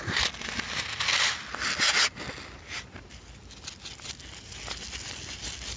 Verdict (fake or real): real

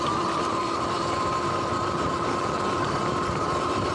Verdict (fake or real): real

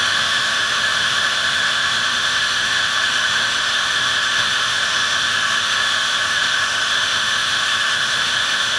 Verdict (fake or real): fake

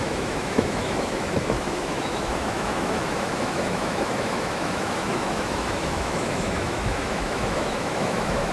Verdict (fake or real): fake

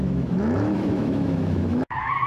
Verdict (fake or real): fake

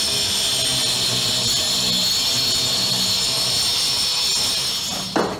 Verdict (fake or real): real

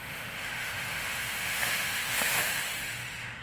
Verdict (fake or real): fake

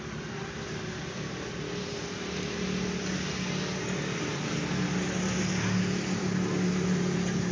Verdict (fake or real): real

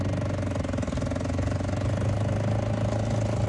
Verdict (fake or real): real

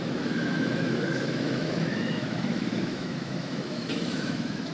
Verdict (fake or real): fake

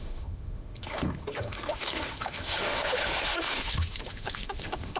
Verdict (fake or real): fake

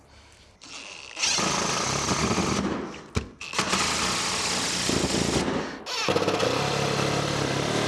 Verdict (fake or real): real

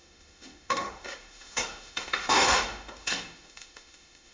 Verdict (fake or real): fake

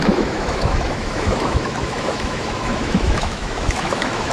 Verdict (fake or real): fake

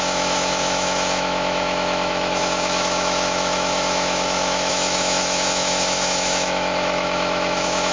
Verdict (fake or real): fake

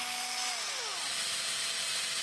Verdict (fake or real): real